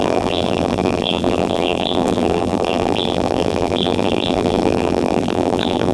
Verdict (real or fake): fake